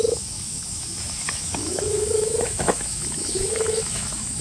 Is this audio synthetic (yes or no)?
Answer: yes